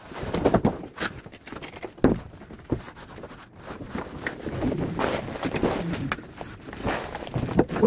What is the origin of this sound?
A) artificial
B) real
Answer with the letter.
B